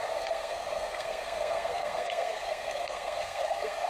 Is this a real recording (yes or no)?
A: no